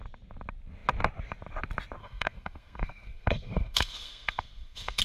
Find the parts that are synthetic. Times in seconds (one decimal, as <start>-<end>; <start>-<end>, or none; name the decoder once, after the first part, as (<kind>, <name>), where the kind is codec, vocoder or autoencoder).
2.0-5.0 (codec, SNAC)